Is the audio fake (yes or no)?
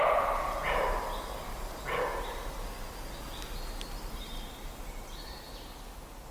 no